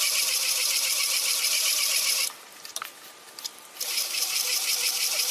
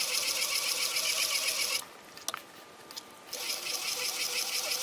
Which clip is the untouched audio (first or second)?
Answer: second